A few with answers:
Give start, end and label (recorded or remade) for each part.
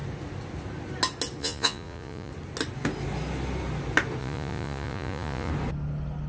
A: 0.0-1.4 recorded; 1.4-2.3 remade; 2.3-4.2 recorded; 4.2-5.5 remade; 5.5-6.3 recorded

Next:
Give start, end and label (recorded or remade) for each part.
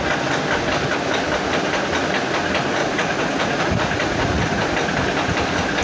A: 0.0-2.8 recorded; 2.8-4.7 remade; 4.7-5.8 recorded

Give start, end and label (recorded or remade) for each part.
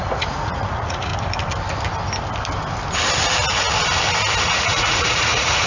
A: 0.0-1.1 remade; 1.1-4.5 recorded; 4.5-5.7 remade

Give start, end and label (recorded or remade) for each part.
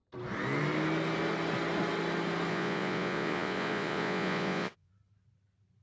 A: 0.0-2.5 recorded; 2.5-4.9 remade; 4.9-5.8 recorded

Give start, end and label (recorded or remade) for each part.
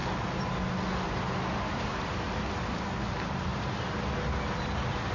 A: 0.0-5.1 recorded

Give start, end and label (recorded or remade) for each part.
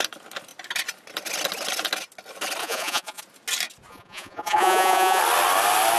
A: 0.0-2.6 recorded; 2.6-3.2 remade; 3.2-3.9 recorded; 3.9-5.2 remade; 5.2-6.0 recorded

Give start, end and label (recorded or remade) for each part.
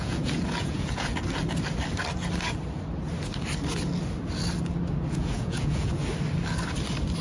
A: 0.0-1.1 remade; 1.1-5.1 recorded; 5.1-6.0 remade; 6.0-7.2 recorded